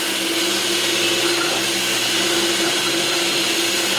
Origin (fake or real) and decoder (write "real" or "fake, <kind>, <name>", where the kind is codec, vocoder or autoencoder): real